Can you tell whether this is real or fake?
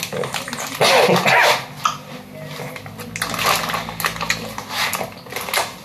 real